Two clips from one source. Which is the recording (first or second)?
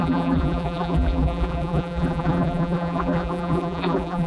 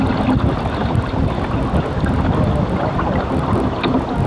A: second